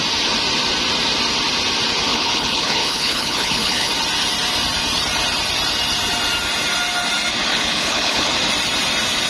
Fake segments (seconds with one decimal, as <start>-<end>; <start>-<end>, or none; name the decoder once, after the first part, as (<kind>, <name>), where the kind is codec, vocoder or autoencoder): 2.1-3.9 (codec, HILCodec); 7.5-8.3